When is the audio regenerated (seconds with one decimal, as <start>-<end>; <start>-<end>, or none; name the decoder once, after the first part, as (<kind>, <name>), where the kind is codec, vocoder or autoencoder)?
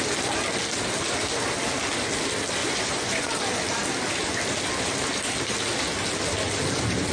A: 2.6-3.3 (vocoder, Vocos)